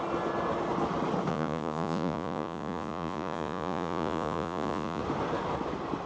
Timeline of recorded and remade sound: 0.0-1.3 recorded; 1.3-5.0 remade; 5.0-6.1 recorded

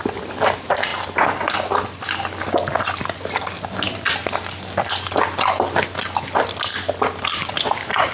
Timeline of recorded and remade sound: 0.0-8.1 recorded

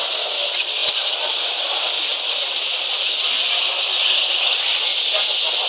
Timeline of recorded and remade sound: 0.0-5.7 recorded

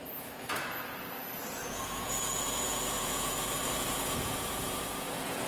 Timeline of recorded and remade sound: 0.0-5.5 remade

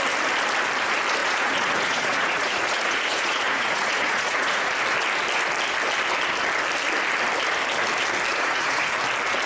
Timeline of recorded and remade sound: 0.0-1.2 recorded; 1.2-4.7 remade; 4.7-8.3 recorded; 8.3-9.0 remade; 9.0-9.5 recorded

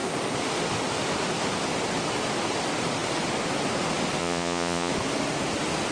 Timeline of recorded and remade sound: 0.0-4.2 recorded; 4.2-4.9 remade; 4.9-5.9 recorded